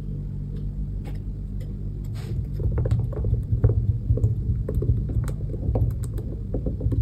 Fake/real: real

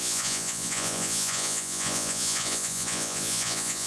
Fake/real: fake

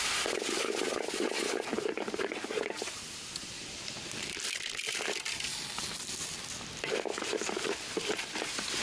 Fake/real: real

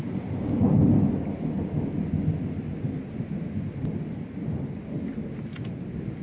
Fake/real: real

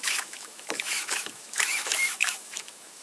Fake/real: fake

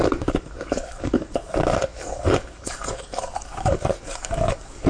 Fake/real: fake